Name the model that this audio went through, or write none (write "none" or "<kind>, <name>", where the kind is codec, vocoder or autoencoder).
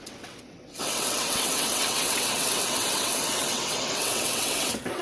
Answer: vocoder, WaveNeXt